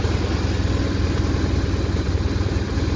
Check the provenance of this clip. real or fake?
real